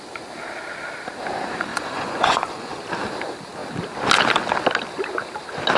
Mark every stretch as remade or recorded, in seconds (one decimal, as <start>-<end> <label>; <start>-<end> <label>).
0.0-1.7 recorded; 1.7-2.8 remade; 2.8-5.8 recorded